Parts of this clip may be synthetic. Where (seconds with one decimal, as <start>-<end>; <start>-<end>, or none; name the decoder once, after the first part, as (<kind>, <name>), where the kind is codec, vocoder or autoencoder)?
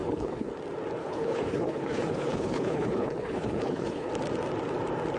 0.0-0.5 (codec, HILCodec); 1.0-4.1